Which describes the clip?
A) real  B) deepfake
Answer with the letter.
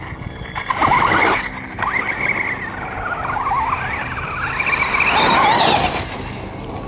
A